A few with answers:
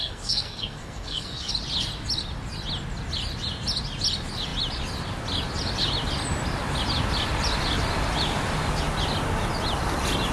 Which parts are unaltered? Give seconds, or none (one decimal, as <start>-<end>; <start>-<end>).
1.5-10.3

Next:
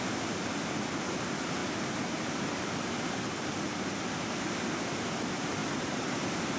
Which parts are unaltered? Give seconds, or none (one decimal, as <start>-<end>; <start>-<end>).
0.0-5.6

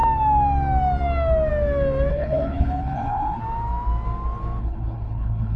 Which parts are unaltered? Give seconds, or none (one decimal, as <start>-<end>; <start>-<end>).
0.0-2.1; 3.4-4.6